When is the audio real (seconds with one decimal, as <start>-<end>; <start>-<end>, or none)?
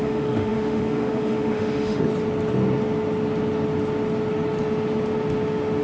2.0-5.8